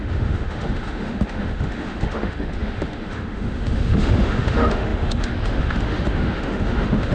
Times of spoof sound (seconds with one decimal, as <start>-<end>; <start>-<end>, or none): 0.0-7.1